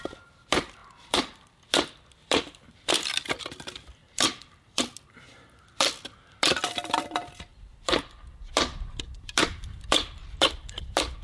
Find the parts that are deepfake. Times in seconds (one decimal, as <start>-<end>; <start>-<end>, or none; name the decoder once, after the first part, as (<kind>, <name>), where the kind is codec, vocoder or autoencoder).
0.8-1.4 (vocoder, BigVGAN v2); 2.2-2.9; 4.0-4.8; 7.5-8.0